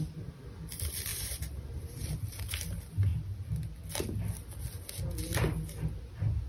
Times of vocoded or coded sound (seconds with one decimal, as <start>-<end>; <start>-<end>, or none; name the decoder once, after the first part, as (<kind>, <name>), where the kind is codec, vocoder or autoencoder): 1.1-2.4 (vocoder, BigVGAN v2)